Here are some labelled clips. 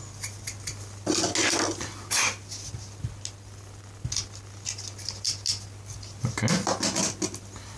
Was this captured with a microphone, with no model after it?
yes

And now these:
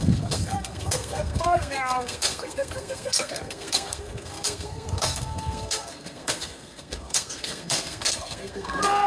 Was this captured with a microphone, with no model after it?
no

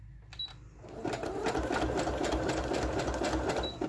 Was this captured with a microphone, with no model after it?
yes